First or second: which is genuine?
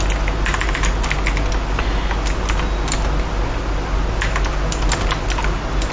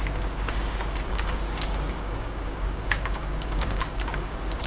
first